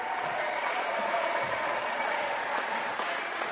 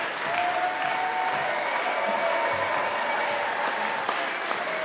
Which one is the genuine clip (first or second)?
second